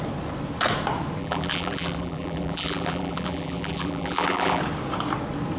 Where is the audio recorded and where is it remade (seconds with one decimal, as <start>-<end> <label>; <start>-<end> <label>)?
0.0-1.2 recorded; 1.2-4.6 remade; 4.6-5.6 recorded